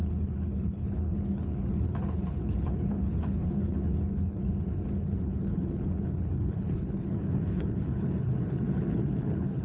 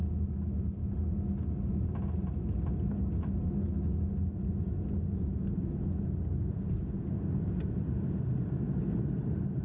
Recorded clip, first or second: second